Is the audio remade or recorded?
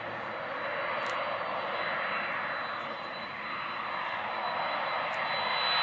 recorded